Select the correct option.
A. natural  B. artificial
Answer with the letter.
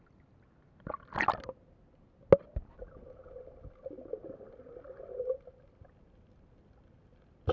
A